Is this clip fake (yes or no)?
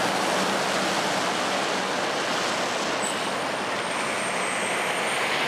no